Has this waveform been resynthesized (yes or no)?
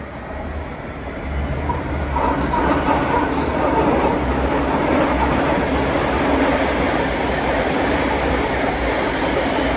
no